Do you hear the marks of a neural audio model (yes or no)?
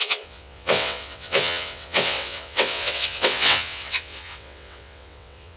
yes